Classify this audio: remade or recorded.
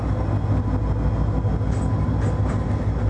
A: recorded